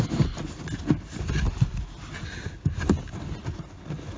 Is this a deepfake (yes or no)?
no